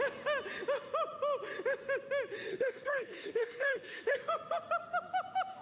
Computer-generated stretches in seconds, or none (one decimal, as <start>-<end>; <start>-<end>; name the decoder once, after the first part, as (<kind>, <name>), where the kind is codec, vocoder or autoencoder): 2.5-4.2 (codec, HILCodec)